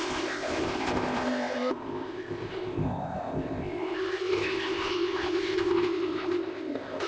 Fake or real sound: fake